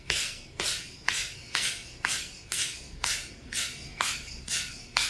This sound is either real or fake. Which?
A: fake